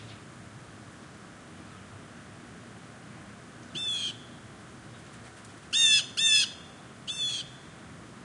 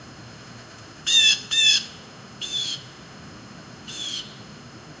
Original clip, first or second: first